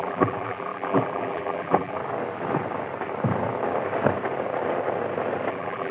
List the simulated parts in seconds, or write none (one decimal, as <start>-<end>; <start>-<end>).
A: 0.0-2.0; 5.5-5.9